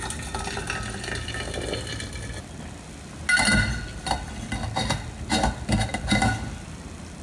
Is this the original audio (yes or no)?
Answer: yes